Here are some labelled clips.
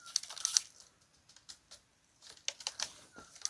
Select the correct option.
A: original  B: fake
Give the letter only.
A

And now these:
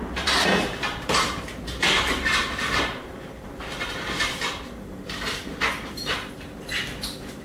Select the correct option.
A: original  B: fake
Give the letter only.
B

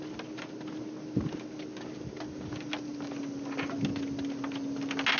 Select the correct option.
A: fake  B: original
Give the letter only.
B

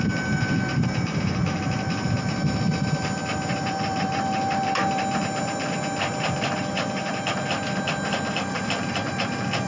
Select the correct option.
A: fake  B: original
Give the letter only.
A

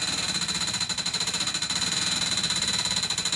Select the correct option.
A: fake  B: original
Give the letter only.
A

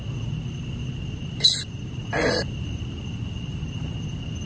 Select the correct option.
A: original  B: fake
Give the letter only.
A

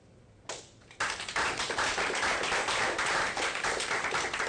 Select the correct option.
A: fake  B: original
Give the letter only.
A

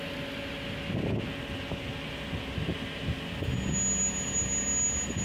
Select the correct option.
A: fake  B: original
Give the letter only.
B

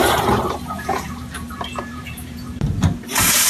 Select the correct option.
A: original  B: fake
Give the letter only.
B